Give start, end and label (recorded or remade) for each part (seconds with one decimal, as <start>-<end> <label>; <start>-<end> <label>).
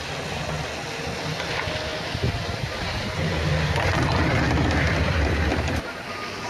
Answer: 0.0-5.5 recorded; 5.5-6.0 remade; 6.0-6.5 recorded